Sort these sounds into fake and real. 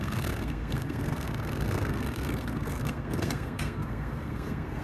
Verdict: fake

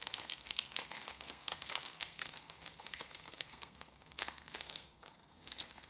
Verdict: fake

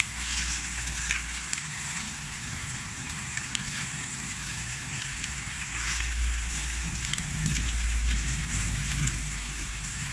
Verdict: fake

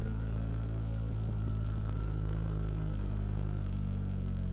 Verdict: fake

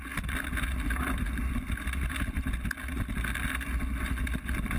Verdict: real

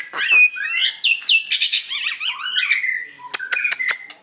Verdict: real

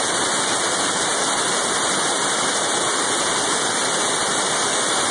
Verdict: real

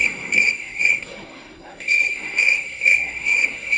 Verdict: fake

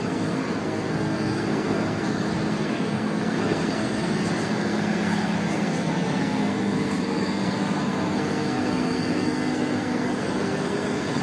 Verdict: fake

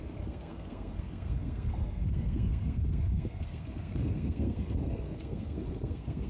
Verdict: fake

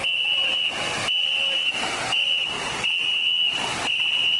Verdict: real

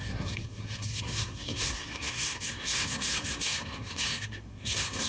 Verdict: fake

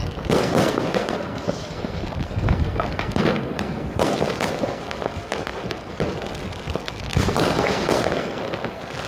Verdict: fake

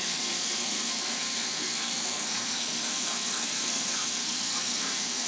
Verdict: fake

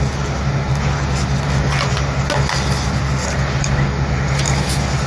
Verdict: real